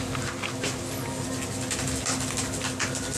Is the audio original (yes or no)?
yes